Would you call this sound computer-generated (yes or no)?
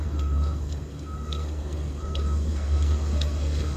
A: yes